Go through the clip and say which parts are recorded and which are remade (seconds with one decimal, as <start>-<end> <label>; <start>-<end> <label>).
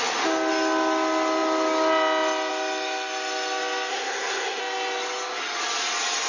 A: 0.0-3.9 recorded; 3.9-4.6 remade; 4.6-6.3 recorded